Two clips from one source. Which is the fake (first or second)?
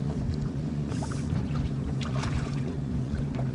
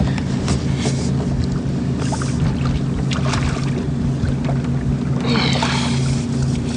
first